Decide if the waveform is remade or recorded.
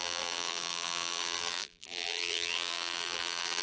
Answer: remade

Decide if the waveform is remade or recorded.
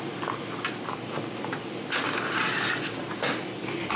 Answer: recorded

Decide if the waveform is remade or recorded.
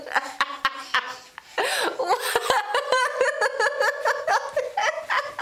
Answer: remade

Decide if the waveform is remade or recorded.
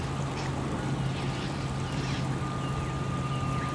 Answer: recorded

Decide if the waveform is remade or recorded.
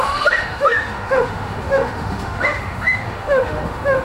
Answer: remade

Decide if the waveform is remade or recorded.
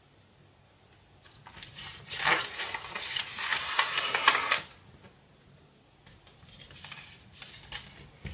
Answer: recorded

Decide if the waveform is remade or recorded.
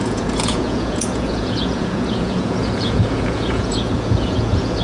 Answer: remade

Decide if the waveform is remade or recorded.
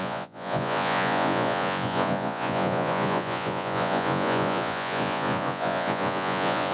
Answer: remade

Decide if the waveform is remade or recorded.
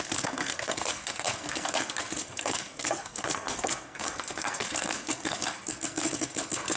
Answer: remade